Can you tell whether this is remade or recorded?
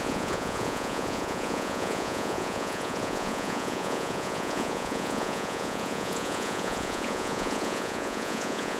remade